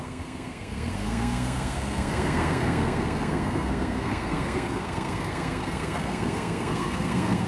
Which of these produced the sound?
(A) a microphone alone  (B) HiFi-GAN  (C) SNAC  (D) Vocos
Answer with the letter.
C